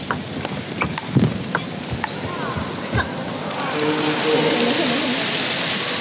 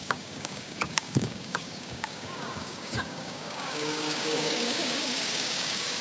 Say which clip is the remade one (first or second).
second